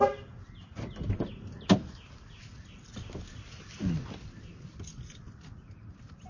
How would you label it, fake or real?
real